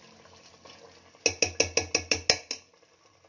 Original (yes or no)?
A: yes